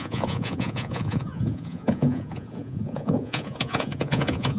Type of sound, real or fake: fake